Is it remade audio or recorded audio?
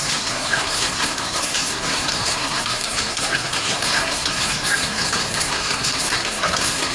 remade